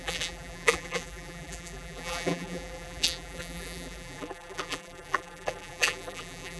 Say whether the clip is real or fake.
fake